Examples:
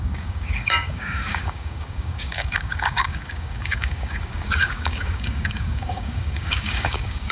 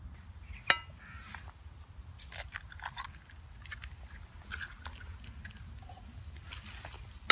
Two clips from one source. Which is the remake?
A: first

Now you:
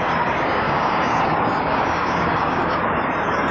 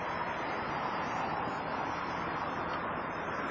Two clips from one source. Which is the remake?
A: first